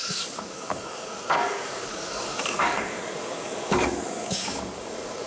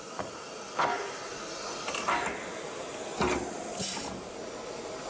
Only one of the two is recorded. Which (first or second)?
second